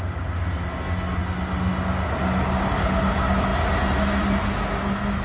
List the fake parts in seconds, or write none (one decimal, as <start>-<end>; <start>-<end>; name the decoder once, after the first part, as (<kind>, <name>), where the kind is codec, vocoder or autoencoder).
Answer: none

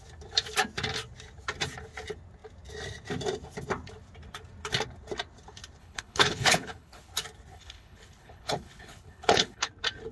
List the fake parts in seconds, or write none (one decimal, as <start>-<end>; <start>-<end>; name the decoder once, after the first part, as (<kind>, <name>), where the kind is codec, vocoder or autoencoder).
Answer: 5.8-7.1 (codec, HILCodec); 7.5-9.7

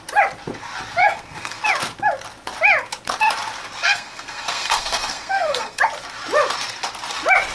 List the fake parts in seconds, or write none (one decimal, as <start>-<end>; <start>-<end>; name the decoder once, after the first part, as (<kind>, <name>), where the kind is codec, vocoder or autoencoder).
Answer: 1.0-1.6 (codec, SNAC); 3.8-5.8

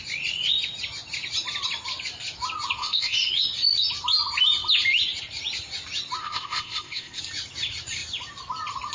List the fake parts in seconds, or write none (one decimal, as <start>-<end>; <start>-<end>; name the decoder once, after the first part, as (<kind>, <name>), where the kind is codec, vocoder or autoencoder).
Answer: 2.8-3.3 (codec, ZipCodec); 6.2-7.2

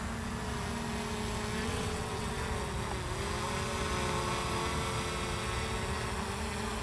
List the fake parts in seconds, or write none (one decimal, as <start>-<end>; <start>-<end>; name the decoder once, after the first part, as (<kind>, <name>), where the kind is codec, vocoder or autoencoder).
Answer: 1.6-2.3 (vocoder, WaveNeXt)

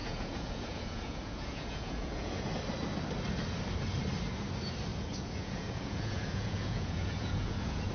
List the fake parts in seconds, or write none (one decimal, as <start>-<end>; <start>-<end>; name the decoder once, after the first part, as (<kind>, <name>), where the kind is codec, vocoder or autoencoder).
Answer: 0.0-2.5 (vocoder, Vocos); 4.9-7.9

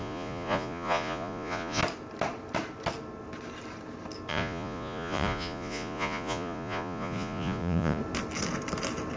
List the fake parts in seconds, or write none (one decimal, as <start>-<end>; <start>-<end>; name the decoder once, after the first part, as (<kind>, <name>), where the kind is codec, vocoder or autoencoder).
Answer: 0.0-1.8 (vocoder, Vocos); 4.3-8.0